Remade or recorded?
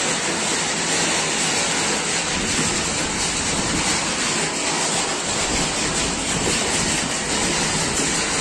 recorded